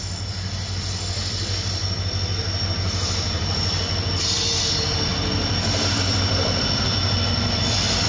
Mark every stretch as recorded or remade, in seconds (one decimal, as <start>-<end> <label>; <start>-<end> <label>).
0.0-8.1 recorded